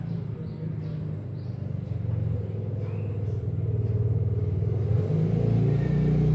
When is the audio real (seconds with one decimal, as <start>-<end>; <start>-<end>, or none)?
0.0-6.3

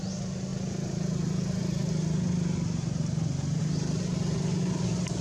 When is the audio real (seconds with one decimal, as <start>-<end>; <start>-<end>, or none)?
0.0-5.2

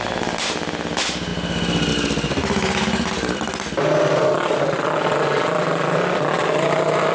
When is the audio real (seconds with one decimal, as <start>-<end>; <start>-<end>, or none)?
0.0-7.1

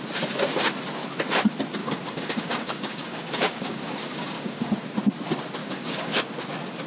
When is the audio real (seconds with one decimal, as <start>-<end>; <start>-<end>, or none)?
0.0-1.8; 4.7-5.6; 6.2-6.9

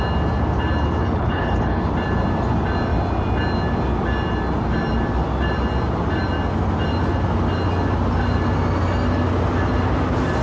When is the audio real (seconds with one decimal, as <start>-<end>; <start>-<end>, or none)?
0.0-1.0; 1.9-10.4

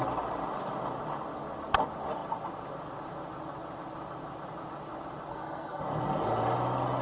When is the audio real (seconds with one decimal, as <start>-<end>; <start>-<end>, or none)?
0.0-5.3; 5.8-7.0

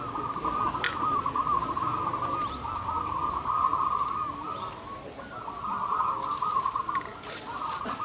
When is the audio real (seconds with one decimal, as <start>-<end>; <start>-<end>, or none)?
0.0-8.0